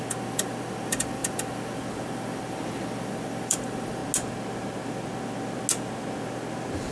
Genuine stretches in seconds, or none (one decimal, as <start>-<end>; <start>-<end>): 4.0-6.9

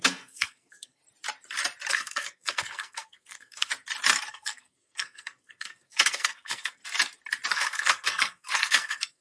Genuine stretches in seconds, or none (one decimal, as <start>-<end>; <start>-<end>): 1.0-1.9; 3.7-4.3; 6.8-7.5

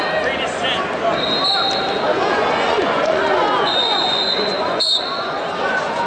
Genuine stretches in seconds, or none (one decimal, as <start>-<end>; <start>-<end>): 0.0-2.1

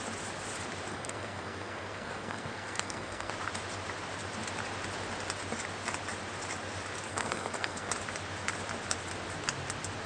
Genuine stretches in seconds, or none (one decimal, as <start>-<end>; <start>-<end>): 0.0-0.9; 3.3-7.1; 7.9-10.1

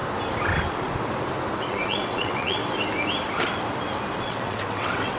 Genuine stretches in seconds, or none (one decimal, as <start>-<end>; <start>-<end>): 0.0-1.6; 2.6-4.2